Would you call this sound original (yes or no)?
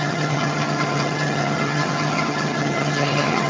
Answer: no